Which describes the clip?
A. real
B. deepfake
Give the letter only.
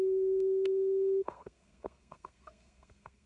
B